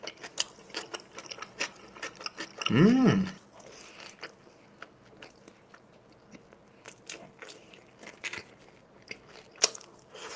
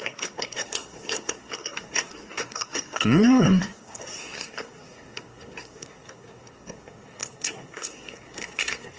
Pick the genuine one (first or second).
first